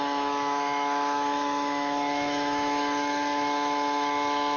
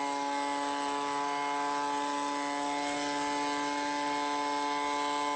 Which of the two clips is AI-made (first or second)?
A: first